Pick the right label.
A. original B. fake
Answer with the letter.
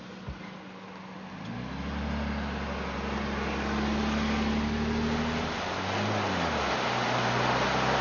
A